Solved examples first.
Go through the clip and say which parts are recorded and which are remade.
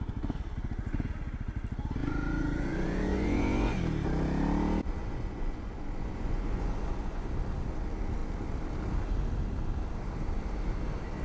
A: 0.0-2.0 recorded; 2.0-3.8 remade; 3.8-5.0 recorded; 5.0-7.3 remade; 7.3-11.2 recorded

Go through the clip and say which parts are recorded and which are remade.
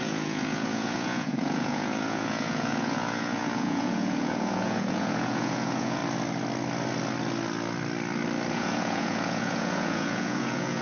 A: 0.0-6.0 remade; 6.0-8.5 recorded; 8.5-10.8 remade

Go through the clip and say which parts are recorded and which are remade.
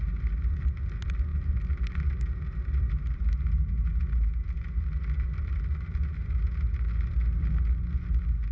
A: 0.0-8.5 recorded